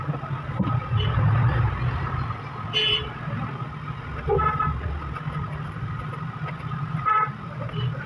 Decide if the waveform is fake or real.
real